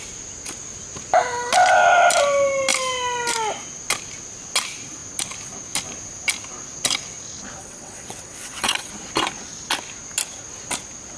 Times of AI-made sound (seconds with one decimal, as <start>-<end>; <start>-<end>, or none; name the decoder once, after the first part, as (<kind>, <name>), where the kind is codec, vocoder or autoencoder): 7.6-8.9 (vocoder, WaveNeXt)